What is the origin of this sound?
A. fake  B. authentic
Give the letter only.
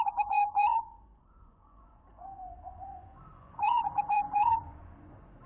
A